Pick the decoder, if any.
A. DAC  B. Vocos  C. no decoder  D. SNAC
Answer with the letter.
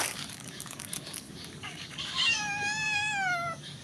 A